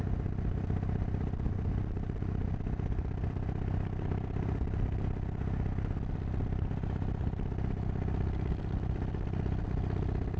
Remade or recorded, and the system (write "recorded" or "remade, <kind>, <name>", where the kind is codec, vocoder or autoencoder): recorded